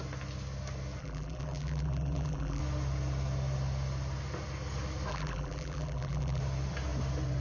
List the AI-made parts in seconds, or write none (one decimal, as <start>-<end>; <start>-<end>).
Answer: 1.0-2.6; 5.1-6.4